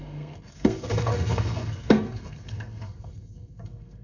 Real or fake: fake